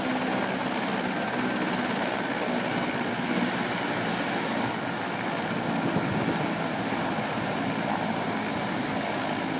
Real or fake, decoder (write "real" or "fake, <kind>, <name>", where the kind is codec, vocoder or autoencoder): real